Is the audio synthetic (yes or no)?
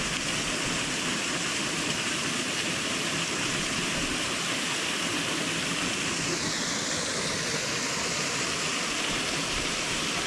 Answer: no